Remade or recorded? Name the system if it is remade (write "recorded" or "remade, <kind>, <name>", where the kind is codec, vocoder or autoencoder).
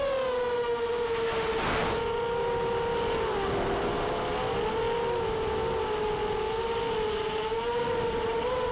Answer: recorded